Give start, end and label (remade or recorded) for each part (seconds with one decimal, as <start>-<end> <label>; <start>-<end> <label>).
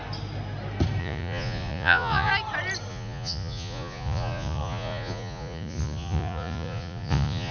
0.0-1.0 recorded; 1.0-2.3 remade; 2.3-2.9 recorded; 2.9-7.5 remade